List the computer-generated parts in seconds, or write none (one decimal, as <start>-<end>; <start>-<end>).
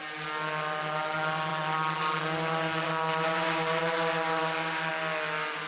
none